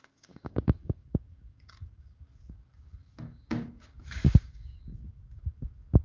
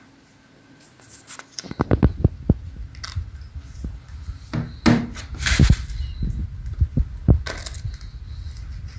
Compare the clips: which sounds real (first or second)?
second